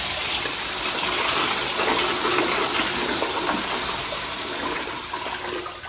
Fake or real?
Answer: real